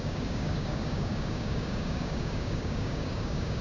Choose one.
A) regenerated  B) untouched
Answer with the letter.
A